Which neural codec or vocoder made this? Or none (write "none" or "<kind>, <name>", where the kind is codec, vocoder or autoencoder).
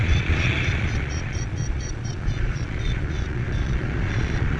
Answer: vocoder, Vocos